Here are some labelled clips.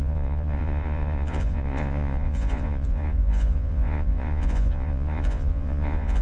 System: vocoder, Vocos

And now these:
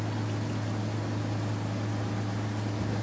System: none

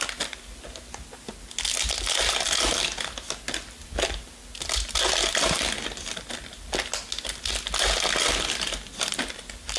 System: none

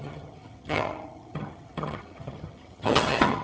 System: vocoder, HiFi-GAN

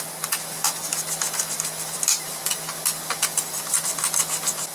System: none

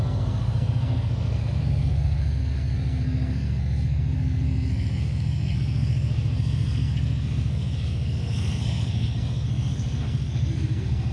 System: codec, SNAC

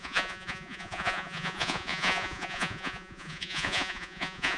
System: vocoder, Vocos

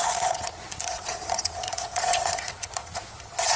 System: vocoder, Vocos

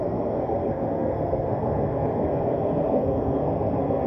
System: codec, SNAC